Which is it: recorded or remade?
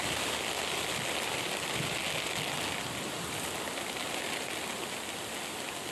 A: recorded